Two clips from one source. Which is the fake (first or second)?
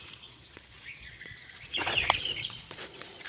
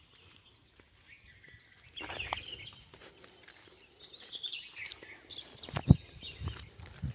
first